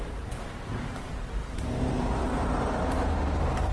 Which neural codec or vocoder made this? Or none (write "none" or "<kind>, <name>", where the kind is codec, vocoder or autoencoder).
vocoder, BigVGAN v2